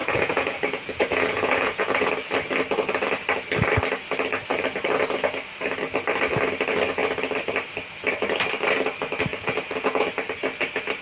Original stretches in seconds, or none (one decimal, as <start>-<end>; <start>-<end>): 2.1-9.3; 10.1-11.0